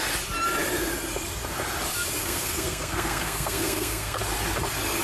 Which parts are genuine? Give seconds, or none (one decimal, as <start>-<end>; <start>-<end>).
0.0-2.2; 4.2-5.0